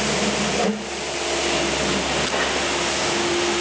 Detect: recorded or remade recorded